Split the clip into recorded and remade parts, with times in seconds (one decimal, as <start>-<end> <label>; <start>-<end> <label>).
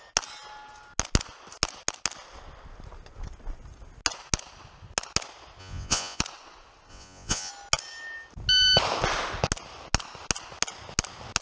0.0-5.6 recorded; 5.6-6.2 remade; 6.2-6.9 recorded; 6.9-7.5 remade; 7.5-11.4 recorded